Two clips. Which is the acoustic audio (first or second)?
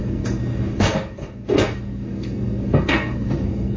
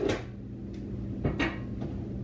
second